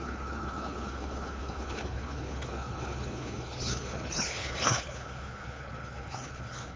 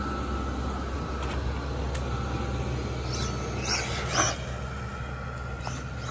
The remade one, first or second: first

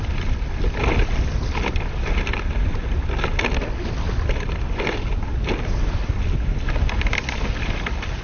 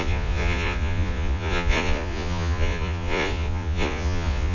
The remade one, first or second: second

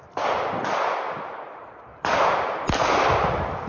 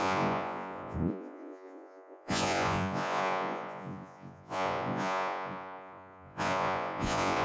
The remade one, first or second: second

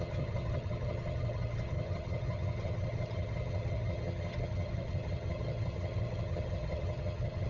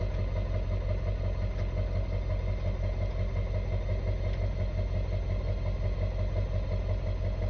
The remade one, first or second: first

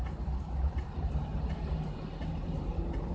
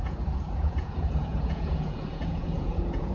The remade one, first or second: second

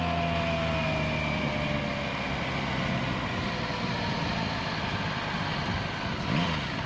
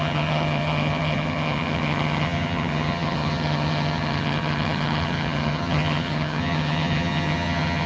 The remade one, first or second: second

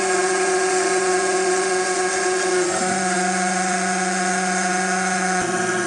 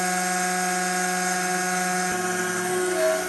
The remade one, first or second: first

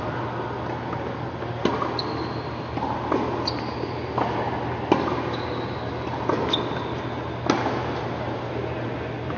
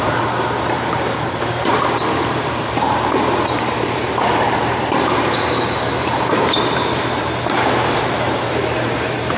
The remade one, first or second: second